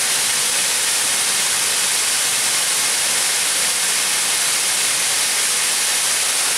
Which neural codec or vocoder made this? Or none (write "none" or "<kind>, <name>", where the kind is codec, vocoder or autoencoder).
none